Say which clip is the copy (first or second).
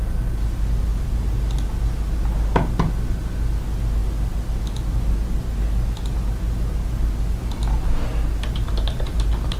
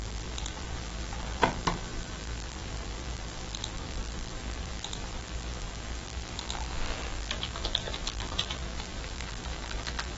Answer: second